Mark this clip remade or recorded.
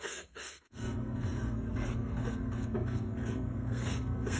remade